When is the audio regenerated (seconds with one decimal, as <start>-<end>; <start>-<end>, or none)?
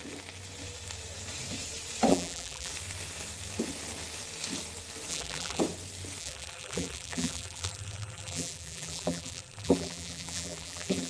2.1-2.7; 5.1-5.6; 6.2-11.1